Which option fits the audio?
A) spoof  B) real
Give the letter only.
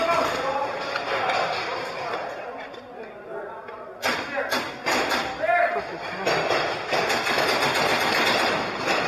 B